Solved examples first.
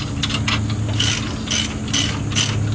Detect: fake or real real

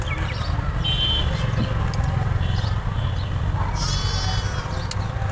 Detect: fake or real real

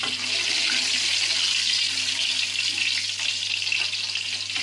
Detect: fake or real real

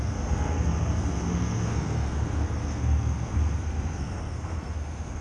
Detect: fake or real fake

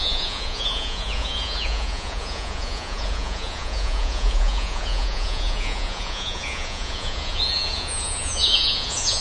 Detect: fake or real fake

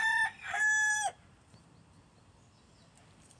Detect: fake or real real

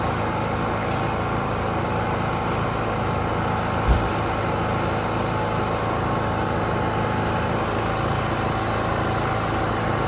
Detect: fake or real real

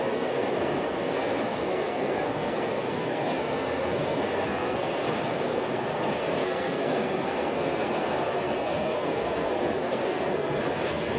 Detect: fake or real fake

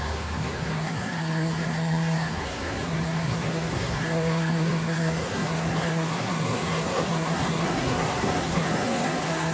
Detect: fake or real fake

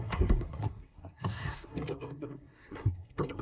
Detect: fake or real fake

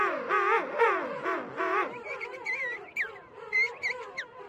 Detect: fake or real real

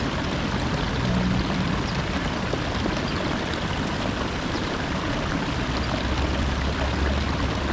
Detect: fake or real real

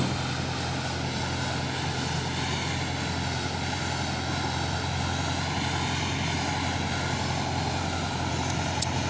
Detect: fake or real real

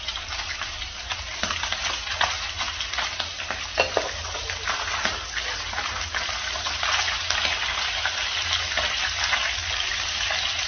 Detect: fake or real real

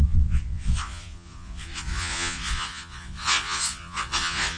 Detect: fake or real fake